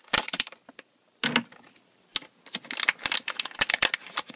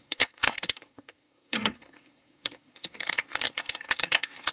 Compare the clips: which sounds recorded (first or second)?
first